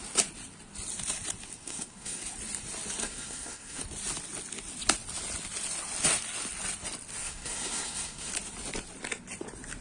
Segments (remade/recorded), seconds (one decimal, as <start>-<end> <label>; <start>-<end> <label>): 0.0-1.6 recorded; 1.6-2.2 remade; 2.2-3.0 recorded; 3.0-3.8 remade; 3.8-7.2 recorded; 7.2-8.3 remade; 8.3-9.8 recorded